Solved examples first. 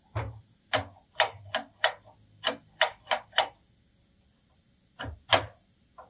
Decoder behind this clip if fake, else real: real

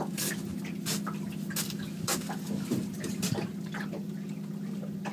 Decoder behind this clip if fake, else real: real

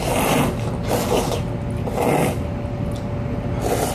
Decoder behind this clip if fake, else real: real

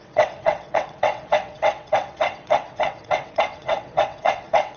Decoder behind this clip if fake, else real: fake, vocoder, WaveNeXt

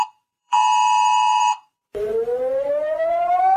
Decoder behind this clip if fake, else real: fake, vocoder, BigVGAN v2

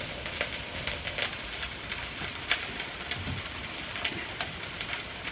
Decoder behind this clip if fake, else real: real